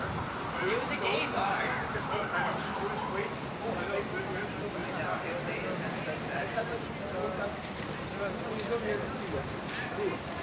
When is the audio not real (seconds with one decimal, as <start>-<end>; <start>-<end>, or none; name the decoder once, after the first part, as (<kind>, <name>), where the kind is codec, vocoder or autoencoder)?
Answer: none